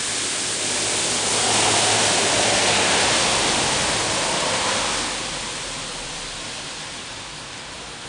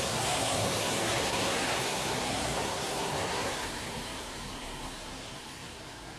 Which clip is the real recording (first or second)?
first